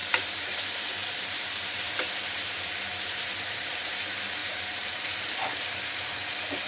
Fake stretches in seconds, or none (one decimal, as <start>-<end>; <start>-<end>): 0.0-4.0; 4.4-5.2